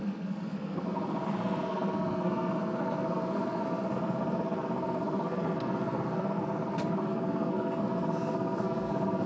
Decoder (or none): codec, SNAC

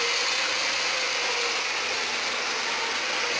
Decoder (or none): none